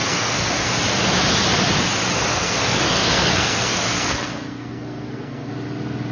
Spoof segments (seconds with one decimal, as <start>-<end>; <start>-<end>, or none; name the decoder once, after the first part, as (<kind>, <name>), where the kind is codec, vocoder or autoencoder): 0.0-0.7 (codec, SNAC); 2.3-5.5